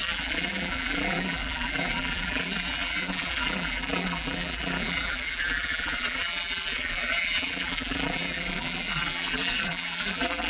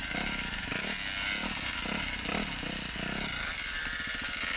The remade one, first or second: first